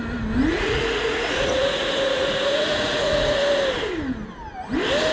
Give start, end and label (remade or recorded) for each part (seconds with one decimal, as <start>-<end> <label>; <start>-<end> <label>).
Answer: 0.0-0.5 recorded; 0.5-3.6 remade; 3.6-5.1 recorded